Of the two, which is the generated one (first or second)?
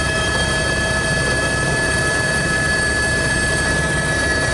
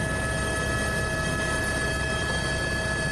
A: first